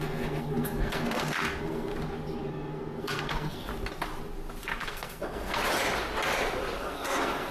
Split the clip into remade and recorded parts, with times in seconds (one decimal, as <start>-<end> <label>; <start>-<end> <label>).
0.0-1.9 remade; 1.9-2.5 recorded; 2.5-3.7 remade; 3.7-4.6 recorded; 4.6-5.6 remade; 5.6-6.8 recorded; 6.8-7.5 remade